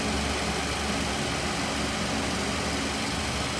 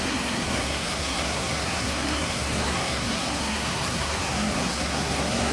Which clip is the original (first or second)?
first